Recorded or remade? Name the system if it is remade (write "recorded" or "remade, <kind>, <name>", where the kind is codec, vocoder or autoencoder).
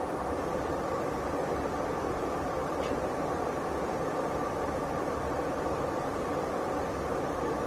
remade, vocoder, BigVGAN v2